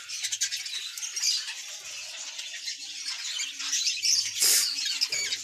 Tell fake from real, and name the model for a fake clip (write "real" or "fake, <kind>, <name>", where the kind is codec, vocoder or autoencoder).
real